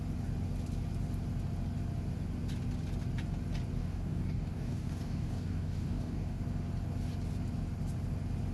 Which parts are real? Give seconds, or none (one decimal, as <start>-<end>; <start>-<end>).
0.0-3.8; 6.4-8.5